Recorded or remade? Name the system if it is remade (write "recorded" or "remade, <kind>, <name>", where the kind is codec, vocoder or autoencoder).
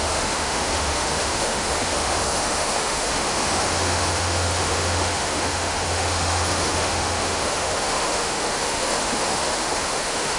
remade, autoencoder, DAC-VAE